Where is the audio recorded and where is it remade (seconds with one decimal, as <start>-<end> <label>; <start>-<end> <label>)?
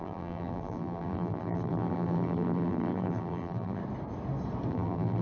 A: 0.0-3.8 remade; 3.8-4.7 recorded; 4.7-5.2 remade